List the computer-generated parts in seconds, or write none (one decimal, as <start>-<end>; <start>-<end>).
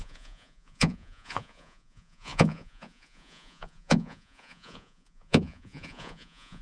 0.0-6.6